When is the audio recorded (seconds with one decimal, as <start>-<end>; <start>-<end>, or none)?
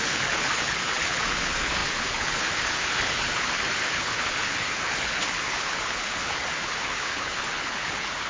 none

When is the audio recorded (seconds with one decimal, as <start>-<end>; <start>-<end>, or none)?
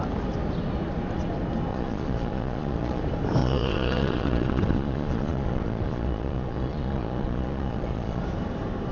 0.0-1.7; 3.0-3.4; 8.2-8.9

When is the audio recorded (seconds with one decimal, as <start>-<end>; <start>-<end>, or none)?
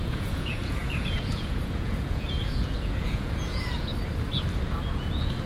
3.9-4.6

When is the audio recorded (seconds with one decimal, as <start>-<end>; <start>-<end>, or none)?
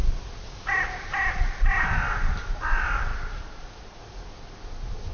0.0-5.1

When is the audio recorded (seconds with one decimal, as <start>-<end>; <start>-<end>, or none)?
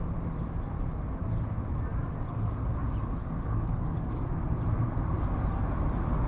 0.0-3.2; 4.2-6.3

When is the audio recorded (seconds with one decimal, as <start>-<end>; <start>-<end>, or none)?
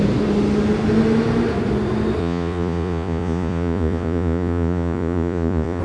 0.0-2.2